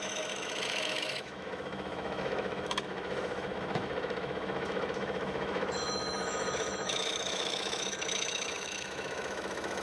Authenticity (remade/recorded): remade